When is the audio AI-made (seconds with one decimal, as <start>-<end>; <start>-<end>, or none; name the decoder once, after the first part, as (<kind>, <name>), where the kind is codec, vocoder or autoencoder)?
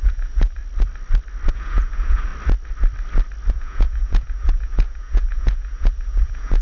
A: 0.0-0.6 (vocoder, Vocos); 1.5-2.3; 3.5-6.6